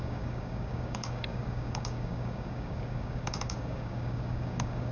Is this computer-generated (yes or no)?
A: yes